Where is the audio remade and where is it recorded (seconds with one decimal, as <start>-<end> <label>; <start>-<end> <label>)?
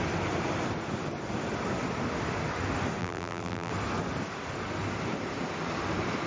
0.0-3.0 recorded; 3.0-3.7 remade; 3.7-6.3 recorded